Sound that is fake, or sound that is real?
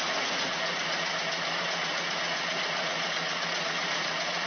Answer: fake